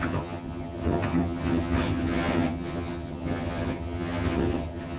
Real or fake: fake